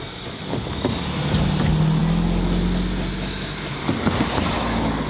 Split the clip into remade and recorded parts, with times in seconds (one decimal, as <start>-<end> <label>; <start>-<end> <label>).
0.0-5.1 recorded